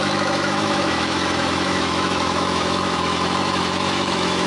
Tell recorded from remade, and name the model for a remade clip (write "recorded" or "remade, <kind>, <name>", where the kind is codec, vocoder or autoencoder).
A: remade, autoencoder, DAC-VAE